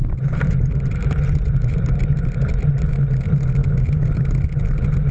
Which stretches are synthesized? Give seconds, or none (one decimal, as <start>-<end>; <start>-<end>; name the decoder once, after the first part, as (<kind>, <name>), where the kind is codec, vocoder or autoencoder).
0.0-3.1 (vocoder, BigVGAN v2)